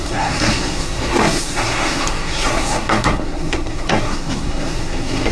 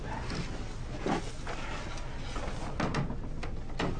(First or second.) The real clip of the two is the second